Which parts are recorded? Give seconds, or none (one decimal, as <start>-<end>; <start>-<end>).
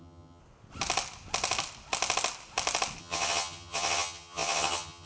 0.4-3.0